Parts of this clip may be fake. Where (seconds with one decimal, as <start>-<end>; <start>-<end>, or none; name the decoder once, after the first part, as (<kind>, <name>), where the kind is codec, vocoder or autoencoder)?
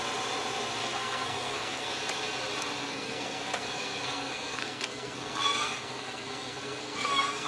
0.8-1.9 (codec, SNAC); 2.8-7.5